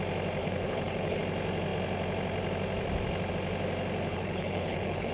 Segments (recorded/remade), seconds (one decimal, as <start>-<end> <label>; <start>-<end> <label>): 0.0-0.4 recorded; 0.4-1.2 remade; 1.2-4.1 recorded; 4.1-5.1 remade